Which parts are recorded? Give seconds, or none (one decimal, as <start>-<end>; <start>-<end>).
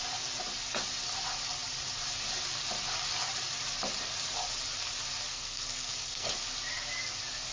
0.0-5.3; 6.3-7.5